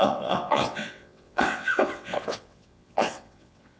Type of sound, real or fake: fake